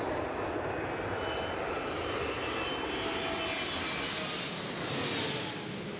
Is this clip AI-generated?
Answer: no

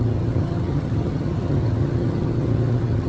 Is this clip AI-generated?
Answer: yes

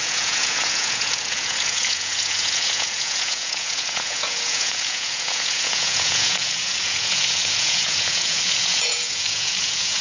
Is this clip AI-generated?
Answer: yes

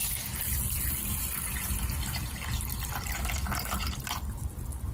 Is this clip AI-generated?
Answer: no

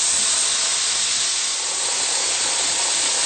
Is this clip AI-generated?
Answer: no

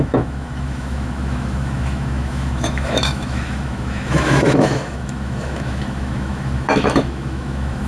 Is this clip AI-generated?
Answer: yes